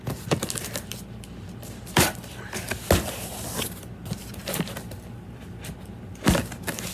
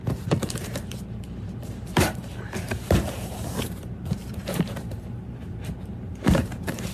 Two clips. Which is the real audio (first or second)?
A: first